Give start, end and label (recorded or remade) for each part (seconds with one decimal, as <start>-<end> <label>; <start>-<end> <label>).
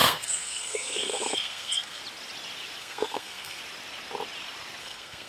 0.0-2.0 remade; 2.0-2.8 recorded; 2.8-3.6 remade; 3.6-4.8 recorded; 4.8-5.3 remade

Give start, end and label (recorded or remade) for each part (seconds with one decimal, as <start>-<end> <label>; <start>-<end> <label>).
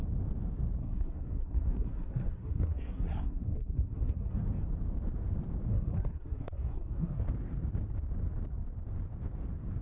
0.0-0.8 recorded; 0.8-4.4 remade; 4.4-5.7 recorded; 5.7-7.2 remade; 7.2-9.8 recorded